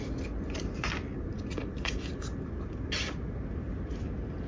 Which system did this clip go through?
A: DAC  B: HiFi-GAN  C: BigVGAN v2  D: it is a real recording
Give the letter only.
D